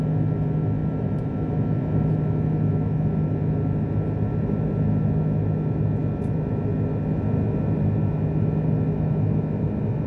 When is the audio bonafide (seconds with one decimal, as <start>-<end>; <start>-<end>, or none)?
0.0-0.8; 1.3-10.1